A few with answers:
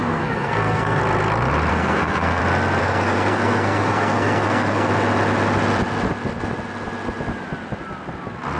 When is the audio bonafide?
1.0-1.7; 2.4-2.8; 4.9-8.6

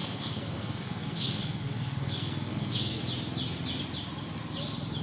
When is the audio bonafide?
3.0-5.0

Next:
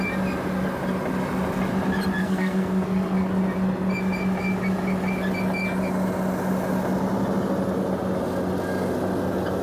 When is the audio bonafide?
0.0-2.2; 3.3-9.6

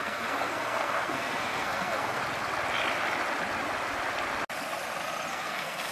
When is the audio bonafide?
2.2-5.3

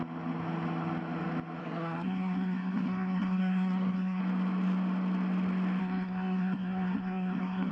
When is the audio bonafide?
0.0-1.6; 4.2-5.8

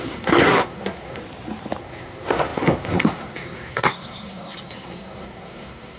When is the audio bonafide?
1.2-1.8